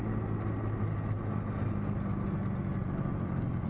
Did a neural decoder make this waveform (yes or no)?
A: no